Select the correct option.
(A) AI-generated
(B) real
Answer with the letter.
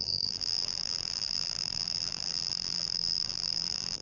A